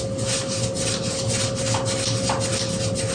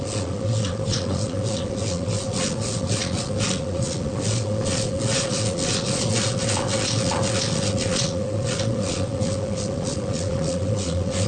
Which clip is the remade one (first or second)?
second